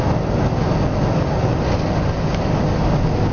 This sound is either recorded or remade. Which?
recorded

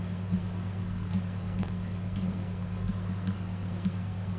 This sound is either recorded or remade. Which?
remade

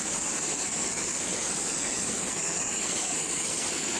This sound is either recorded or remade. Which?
remade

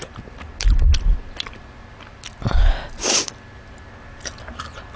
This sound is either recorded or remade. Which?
recorded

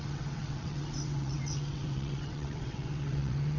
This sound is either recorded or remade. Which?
remade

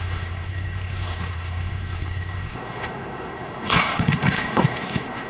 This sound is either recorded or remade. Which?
remade